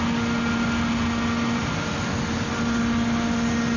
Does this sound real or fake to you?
real